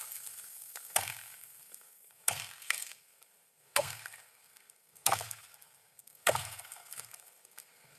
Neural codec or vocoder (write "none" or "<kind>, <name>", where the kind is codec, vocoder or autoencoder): codec, SNAC